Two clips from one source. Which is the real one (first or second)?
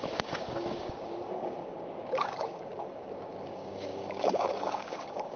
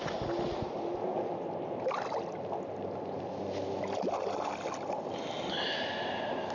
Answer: second